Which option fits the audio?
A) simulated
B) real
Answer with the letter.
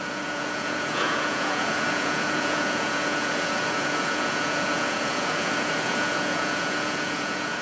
A